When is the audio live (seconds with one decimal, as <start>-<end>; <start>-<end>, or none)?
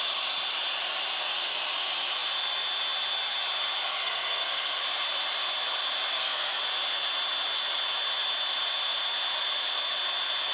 0.0-3.9; 4.8-6.1; 6.6-10.5